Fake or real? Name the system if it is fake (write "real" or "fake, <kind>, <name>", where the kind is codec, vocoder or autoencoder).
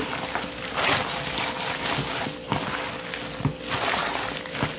real